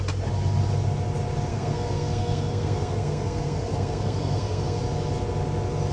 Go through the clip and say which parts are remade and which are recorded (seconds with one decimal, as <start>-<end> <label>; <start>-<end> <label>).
0.0-1.5 recorded; 1.5-4.8 remade; 4.8-5.9 recorded